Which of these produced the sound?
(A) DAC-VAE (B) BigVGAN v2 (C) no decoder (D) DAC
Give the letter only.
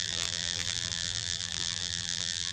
B